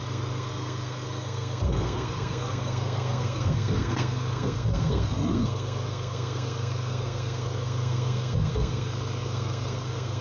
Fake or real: fake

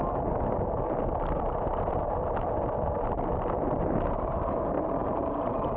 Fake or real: real